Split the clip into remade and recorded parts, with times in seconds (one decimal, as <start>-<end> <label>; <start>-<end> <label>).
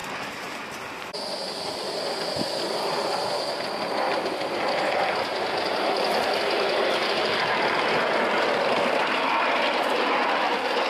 0.0-10.9 recorded